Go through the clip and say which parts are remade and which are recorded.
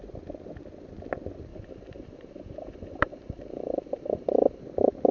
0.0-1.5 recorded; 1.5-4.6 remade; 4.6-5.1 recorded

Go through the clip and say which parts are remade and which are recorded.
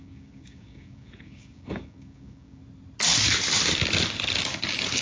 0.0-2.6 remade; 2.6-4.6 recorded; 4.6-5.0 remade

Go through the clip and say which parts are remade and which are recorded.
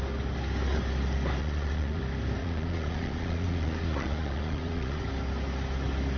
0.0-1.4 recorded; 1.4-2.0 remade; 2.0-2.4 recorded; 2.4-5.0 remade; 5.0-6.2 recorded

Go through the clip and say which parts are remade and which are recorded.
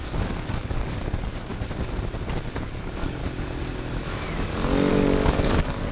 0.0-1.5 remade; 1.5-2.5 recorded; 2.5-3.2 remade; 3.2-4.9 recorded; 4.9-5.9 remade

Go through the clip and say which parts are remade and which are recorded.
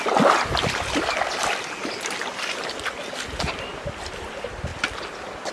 0.0-5.5 recorded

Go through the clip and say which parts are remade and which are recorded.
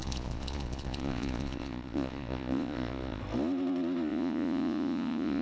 0.0-3.2 remade; 3.2-4.1 recorded; 4.1-5.4 remade